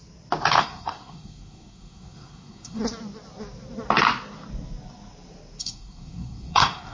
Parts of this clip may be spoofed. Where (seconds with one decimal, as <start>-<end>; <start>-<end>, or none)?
0.6-2.8; 5.6-6.9